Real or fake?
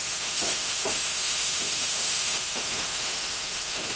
fake